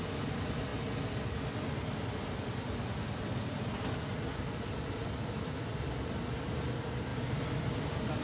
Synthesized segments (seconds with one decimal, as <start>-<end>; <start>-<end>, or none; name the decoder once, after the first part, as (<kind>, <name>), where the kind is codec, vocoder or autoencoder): none